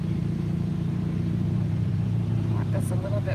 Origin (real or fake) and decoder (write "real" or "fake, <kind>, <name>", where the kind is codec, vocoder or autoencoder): fake, vocoder, BigVGAN v2